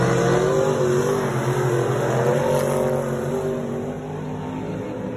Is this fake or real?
real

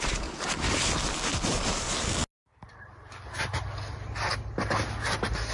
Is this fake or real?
real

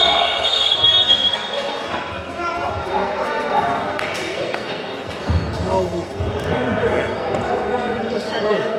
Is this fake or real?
fake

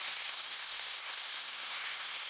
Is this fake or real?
fake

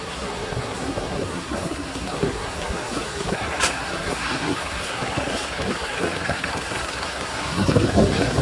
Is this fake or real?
fake